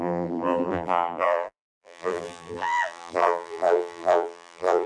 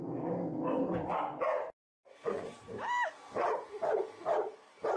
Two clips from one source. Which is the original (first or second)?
second